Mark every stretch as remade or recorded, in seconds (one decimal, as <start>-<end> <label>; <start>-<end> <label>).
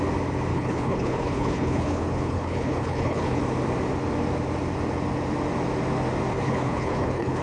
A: 0.0-0.5 recorded; 0.5-3.4 remade; 3.4-6.3 recorded; 6.3-7.4 remade